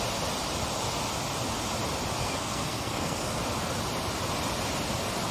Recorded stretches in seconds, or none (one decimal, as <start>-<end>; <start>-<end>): 0.0-2.2; 3.4-5.3